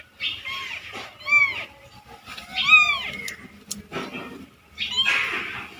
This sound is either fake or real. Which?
real